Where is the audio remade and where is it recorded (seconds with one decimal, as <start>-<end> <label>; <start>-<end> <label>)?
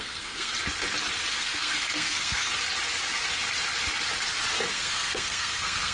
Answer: 0.0-0.5 remade; 0.5-1.3 recorded; 1.3-2.5 remade; 2.5-4.7 recorded; 4.7-5.9 remade